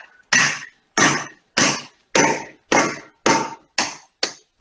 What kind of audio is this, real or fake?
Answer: real